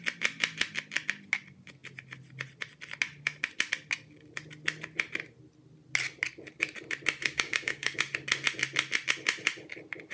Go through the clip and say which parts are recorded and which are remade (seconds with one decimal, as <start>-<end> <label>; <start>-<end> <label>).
0.0-7.2 recorded; 7.2-8.0 remade; 8.0-10.1 recorded